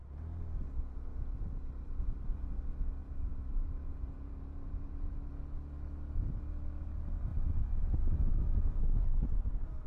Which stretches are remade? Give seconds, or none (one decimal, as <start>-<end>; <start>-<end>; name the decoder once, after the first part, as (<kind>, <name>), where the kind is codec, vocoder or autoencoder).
3.0-5.3 (vocoder, BigVGAN v2); 7.3-8.3